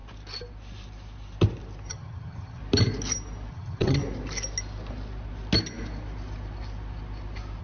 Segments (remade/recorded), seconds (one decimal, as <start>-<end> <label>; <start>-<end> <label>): 0.0-1.9 recorded; 1.9-2.6 remade; 2.6-3.5 recorded; 3.5-4.0 remade; 4.0-7.6 recorded